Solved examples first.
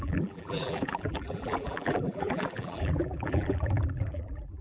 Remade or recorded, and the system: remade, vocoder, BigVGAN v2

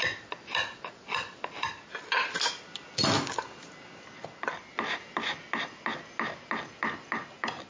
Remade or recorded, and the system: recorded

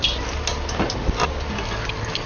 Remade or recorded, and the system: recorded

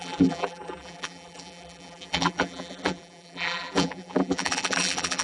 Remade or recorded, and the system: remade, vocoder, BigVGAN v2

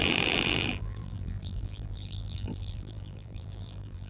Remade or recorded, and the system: remade, vocoder, BigVGAN v2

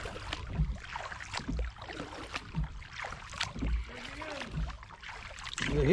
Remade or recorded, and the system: recorded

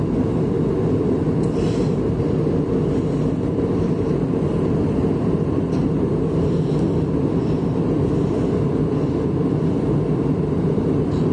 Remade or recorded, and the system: recorded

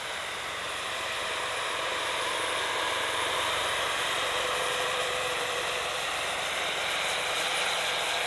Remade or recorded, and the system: remade, vocoder, BigVGAN v2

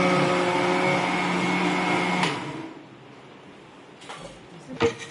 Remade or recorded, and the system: recorded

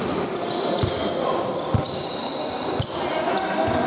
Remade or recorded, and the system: recorded